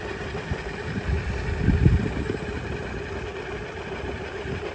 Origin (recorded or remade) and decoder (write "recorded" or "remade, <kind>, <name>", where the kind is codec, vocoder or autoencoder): recorded